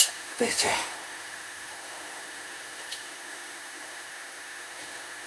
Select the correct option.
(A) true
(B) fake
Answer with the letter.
B